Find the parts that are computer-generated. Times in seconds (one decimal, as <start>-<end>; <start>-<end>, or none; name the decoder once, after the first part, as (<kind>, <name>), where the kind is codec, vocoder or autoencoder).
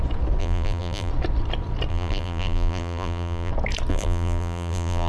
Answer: 0.4-1.1 (vocoder, BigVGAN v2); 1.9-3.5; 3.9-5.1